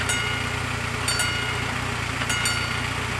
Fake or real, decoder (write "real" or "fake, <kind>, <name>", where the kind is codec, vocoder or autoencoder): real